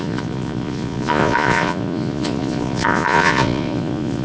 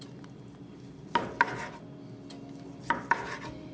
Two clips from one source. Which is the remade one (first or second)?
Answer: first